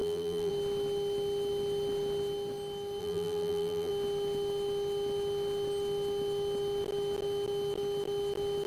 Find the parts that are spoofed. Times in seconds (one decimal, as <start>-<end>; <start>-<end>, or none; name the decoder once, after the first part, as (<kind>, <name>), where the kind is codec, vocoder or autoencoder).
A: 0.0-0.5 (vocoder, BigVGAN v2); 3.0-3.9